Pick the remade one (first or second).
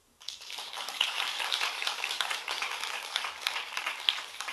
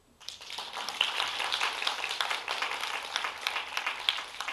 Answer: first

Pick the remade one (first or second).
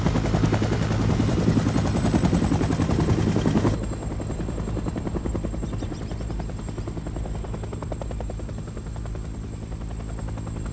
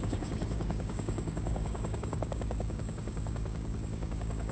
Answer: second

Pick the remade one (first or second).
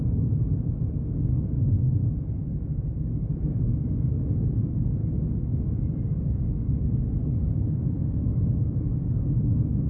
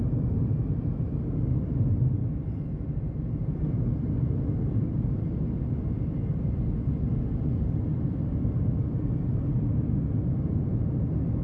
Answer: first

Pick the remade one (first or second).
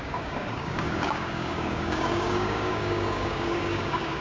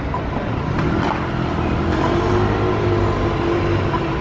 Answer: first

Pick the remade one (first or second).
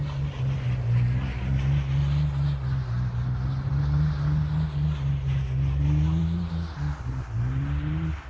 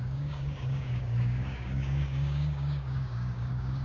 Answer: second